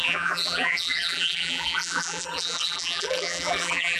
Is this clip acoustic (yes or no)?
no